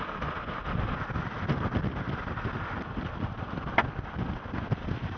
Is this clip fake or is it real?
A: real